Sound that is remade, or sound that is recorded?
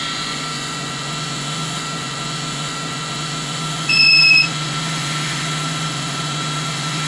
remade